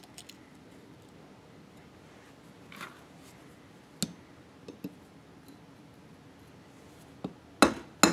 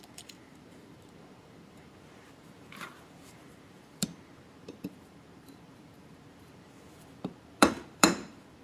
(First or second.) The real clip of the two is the first